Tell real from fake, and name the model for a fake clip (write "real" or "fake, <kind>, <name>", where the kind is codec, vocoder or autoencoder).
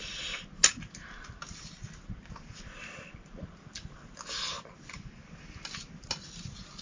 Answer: real